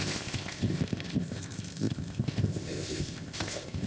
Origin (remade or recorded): remade